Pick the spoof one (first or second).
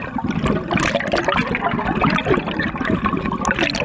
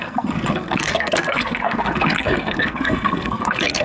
second